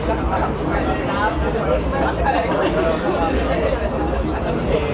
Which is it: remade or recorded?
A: recorded